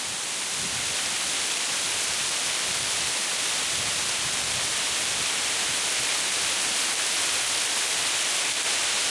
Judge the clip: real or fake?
real